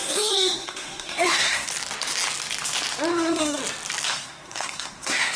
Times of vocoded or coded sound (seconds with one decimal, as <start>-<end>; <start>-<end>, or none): 0.0-1.7; 3.1-3.6; 4.1-5.4